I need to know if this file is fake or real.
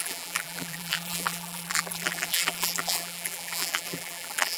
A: fake